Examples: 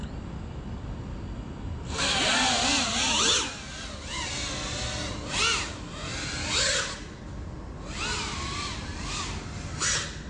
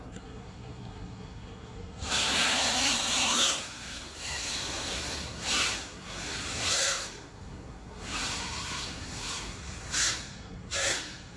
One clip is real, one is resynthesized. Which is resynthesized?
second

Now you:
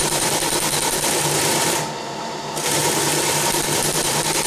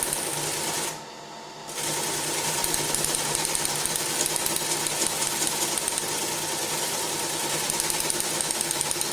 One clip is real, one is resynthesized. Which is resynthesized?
first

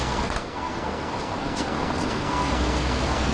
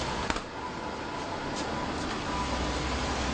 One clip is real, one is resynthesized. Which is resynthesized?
first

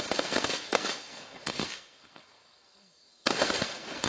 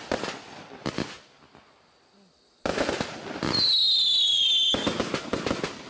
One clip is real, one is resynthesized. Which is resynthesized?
first